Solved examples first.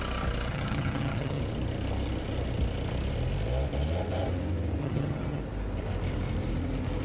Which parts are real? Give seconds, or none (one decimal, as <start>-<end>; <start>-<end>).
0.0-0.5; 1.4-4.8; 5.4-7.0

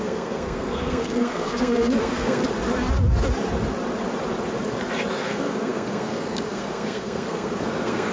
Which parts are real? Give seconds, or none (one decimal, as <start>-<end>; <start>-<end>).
2.4-5.1

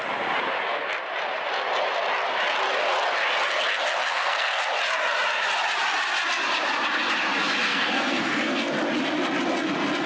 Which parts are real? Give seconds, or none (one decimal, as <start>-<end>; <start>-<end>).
0.0-4.1; 4.6-7.7; 8.7-10.1